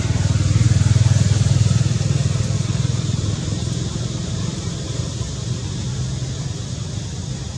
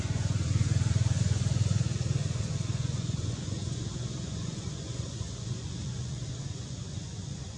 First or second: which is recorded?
first